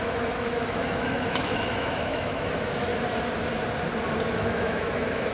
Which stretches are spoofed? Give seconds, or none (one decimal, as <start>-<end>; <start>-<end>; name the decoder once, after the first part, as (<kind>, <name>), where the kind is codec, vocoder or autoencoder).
0.0-2.9 (autoencoder, DAC-VAE); 4.3-5.3